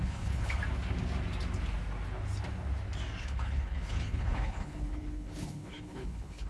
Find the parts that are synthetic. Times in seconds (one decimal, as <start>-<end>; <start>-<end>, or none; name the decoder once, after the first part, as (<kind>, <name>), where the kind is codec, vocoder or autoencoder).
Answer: 0.0-0.6 (codec, HILCodec); 3.2-6.5